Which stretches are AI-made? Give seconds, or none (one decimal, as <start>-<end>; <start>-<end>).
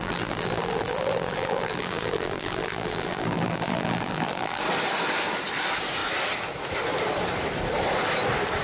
0.0-4.6